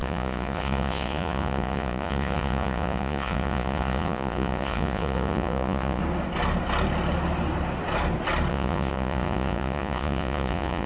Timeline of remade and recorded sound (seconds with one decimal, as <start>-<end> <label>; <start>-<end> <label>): 0.0-6.0 remade; 6.0-8.5 recorded; 8.5-10.9 remade